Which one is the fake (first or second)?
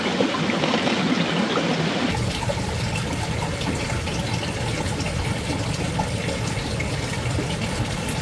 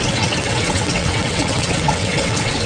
second